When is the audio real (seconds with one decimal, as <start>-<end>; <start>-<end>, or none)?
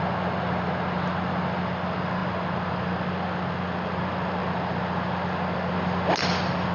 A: 0.0-6.7